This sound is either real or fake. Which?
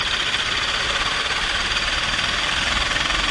fake